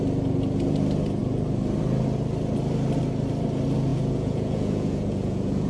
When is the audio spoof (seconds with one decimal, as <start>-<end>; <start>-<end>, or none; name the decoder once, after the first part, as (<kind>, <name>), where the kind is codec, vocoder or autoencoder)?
3.9-5.7 (vocoder, Vocos)

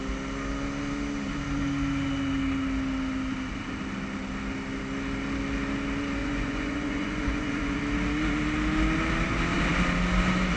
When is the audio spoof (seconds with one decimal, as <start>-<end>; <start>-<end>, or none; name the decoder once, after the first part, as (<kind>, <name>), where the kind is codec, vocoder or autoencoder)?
6.2-7.8 (vocoder, Vocos)

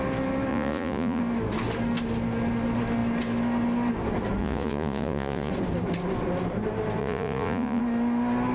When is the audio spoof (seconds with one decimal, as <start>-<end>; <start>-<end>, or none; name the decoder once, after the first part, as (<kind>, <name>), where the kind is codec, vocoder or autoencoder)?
0.5-1.2 (vocoder, Vocos); 4.4-5.5; 7.0-7.8